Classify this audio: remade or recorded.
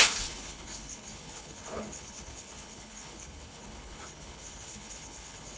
remade